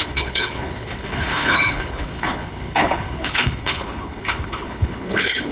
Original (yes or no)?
no